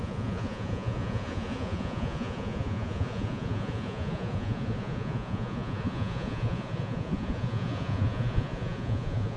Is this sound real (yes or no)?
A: no